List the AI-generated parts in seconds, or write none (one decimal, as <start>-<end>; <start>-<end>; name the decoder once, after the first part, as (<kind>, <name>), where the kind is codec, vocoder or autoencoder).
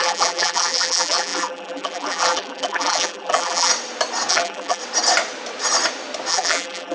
0.0-3.7 (vocoder, BigVGAN v2); 4.3-4.8; 6.3-6.9